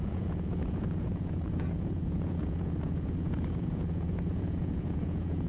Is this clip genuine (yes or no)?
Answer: no